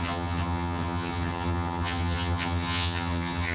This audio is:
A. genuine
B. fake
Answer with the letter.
B